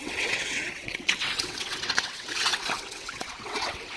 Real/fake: fake